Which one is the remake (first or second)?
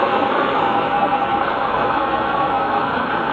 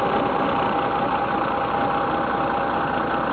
first